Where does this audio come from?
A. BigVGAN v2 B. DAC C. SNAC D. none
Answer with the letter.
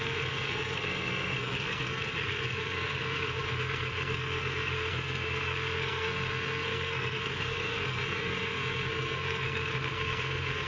C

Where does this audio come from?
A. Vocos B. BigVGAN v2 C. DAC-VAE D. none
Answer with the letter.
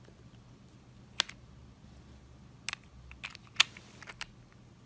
D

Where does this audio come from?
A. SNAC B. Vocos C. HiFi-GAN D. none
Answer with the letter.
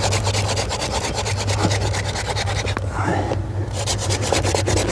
D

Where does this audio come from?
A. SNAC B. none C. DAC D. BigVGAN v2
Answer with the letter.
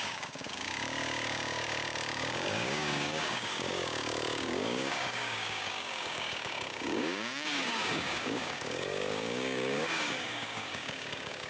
C